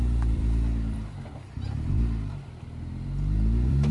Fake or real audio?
fake